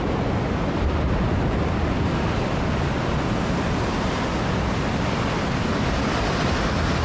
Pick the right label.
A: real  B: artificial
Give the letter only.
A